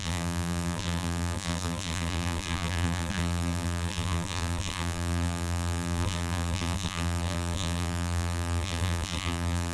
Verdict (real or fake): fake